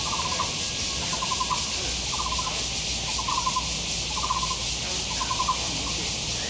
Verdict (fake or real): real